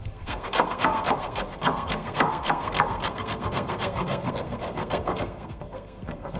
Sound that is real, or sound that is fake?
fake